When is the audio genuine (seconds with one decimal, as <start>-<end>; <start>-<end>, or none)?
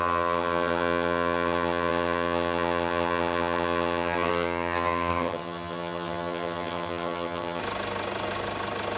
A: 7.6-9.0